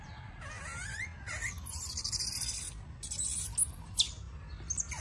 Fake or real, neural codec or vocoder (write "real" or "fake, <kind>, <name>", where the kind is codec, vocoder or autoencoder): real